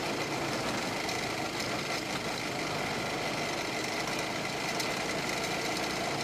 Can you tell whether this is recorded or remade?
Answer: recorded